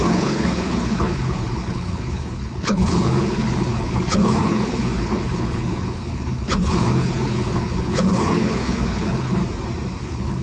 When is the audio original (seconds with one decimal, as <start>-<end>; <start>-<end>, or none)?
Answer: 9.4-10.0